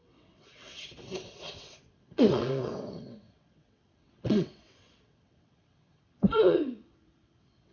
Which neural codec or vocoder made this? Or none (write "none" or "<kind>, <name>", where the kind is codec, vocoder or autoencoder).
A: vocoder, WaveNeXt